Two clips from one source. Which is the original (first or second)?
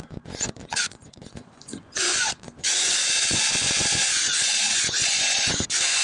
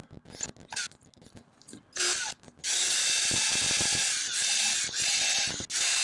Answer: second